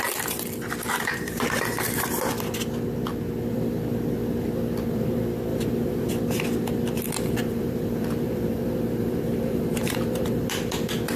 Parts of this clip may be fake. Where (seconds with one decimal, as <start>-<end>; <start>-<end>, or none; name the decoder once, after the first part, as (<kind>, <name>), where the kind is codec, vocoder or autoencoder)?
5.5-6.1 (vocoder, BigVGAN v2); 7.4-11.2